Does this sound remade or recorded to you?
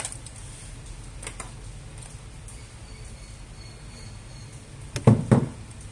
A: recorded